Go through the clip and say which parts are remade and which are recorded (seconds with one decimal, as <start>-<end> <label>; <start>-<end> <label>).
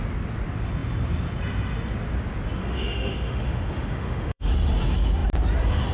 0.0-2.6 recorded; 2.6-4.5 remade; 4.5-5.9 recorded